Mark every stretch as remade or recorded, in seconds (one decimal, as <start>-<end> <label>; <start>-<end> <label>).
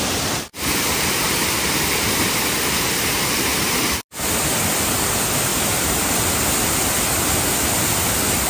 0.0-0.5 recorded; 0.5-3.3 remade; 3.3-8.5 recorded